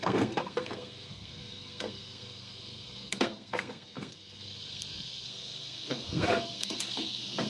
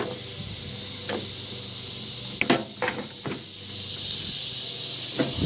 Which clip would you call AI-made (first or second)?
first